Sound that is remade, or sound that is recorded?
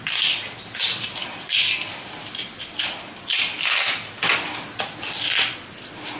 recorded